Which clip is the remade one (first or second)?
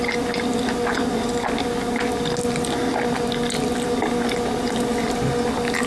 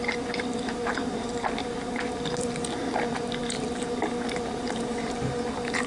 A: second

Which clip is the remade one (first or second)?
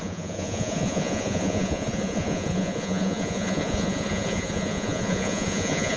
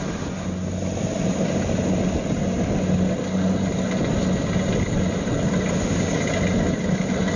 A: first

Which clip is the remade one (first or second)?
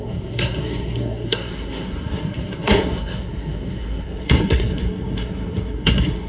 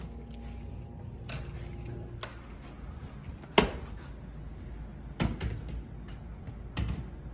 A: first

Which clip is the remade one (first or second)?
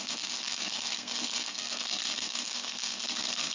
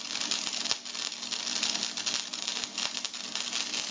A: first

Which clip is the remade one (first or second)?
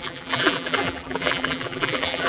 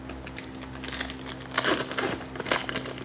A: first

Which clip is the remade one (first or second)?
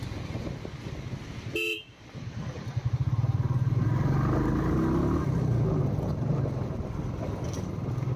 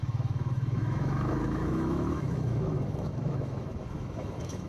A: second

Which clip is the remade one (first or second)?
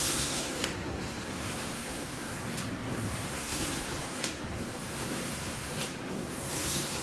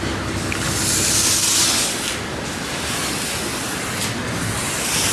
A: first